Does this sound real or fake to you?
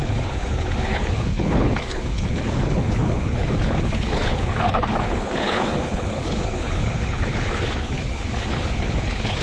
fake